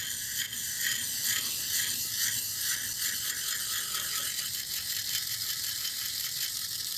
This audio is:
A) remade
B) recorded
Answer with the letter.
B